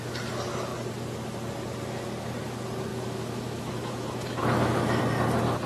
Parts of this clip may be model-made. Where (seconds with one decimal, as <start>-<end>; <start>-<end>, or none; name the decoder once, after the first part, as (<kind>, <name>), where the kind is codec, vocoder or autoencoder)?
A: 2.9-5.0 (autoencoder, DAC-VAE)

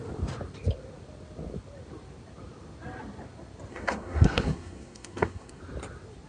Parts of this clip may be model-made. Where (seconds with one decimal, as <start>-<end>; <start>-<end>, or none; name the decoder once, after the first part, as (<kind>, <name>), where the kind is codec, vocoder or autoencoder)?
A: 3.7-5.6 (codec, SNAC)

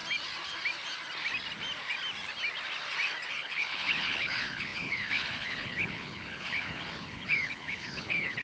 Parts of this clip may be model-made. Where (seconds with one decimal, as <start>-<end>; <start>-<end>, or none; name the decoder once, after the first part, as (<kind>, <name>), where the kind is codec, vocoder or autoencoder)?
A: 3.3-8.4 (codec, HILCodec)

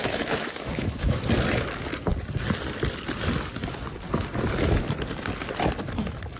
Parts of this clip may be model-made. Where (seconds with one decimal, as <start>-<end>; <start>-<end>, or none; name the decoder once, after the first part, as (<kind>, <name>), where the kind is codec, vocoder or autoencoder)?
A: 0.0-1.2 (autoencoder, DAC-VAE)

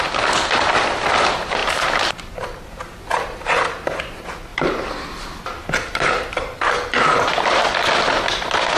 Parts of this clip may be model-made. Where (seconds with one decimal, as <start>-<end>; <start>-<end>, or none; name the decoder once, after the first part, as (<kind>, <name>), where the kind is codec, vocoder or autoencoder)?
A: 4.5-6.7 (vocoder, BigVGAN v2)

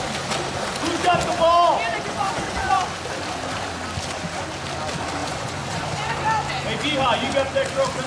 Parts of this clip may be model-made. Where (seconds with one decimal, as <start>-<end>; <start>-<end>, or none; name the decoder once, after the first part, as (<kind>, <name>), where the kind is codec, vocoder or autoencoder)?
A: 1.9-2.8 (vocoder, Vocos); 5.2-6.1